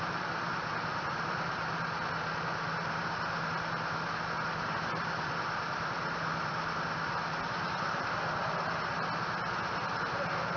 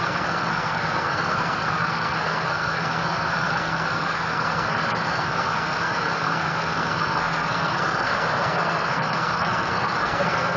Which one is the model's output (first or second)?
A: second